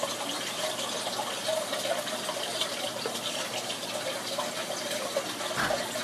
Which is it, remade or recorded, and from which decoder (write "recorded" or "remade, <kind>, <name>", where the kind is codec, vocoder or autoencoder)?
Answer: recorded